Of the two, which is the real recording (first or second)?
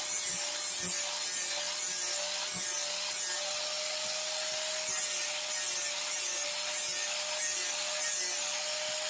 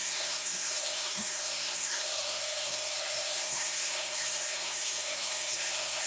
first